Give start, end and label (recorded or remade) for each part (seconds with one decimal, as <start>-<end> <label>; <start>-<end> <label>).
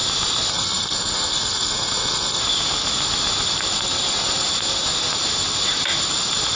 0.0-0.5 recorded; 0.5-2.4 remade; 2.4-6.6 recorded